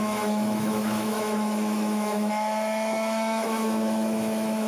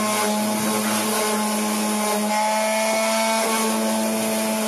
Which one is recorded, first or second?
second